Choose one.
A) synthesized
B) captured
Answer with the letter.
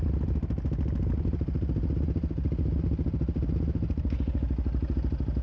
B